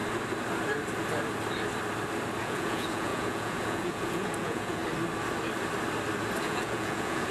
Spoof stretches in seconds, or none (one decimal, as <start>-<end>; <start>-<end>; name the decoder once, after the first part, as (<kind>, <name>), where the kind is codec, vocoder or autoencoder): 2.4-4.8 (vocoder, Vocos); 6.4-7.3